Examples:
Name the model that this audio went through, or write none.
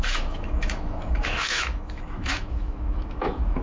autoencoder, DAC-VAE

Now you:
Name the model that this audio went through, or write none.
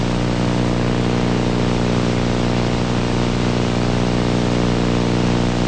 none